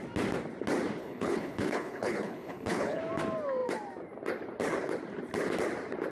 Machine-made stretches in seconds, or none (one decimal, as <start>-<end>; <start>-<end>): 1.0-3.0